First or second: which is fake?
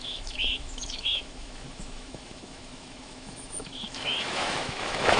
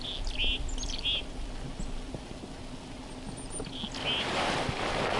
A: first